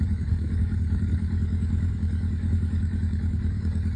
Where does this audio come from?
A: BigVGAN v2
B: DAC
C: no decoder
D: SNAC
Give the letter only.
B